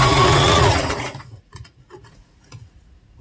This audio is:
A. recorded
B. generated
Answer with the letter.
B